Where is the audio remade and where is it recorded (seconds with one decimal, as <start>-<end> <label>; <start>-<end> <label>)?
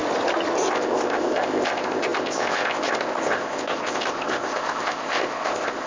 0.0-0.7 recorded; 0.7-5.9 remade